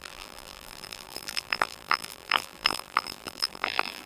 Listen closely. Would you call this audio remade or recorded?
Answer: remade